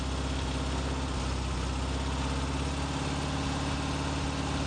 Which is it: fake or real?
real